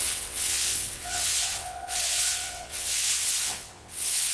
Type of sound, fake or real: fake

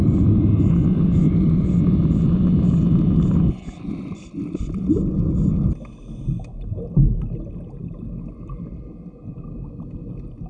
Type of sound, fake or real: real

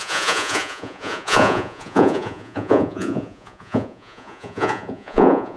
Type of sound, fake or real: fake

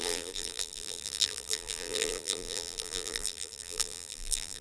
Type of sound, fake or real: fake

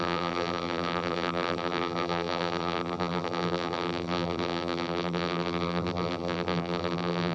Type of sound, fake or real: fake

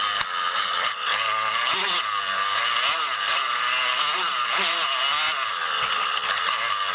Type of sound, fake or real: real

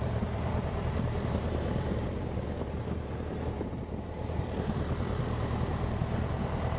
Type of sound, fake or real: fake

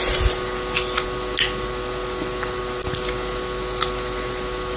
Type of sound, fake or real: real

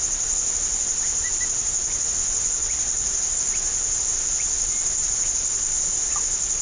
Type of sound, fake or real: real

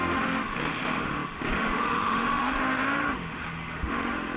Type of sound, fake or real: fake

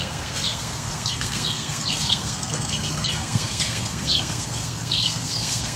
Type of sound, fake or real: fake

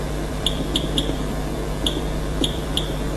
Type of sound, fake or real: fake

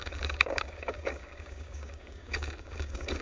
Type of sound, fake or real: fake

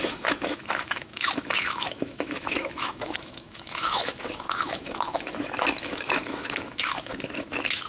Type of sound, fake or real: fake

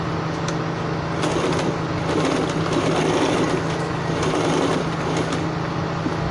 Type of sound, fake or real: real